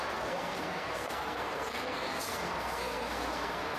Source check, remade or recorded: remade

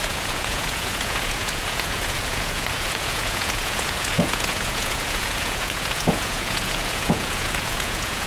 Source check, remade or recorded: remade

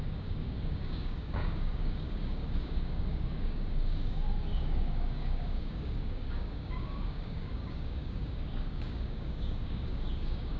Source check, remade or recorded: remade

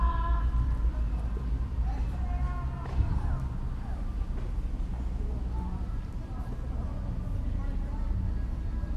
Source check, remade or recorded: recorded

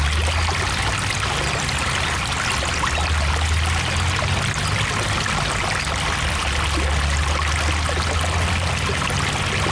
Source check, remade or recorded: recorded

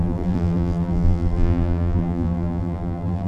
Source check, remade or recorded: remade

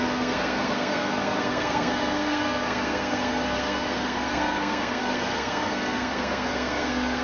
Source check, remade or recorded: remade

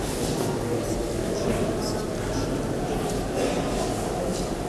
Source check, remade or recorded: recorded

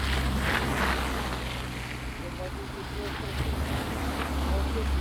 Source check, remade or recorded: recorded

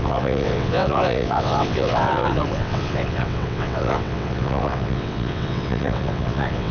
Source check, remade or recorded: remade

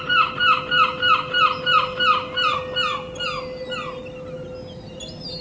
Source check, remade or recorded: recorded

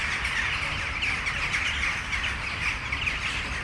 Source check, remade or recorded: recorded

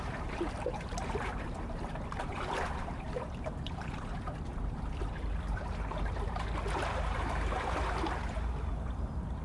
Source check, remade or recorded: remade